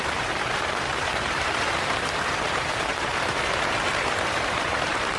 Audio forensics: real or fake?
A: fake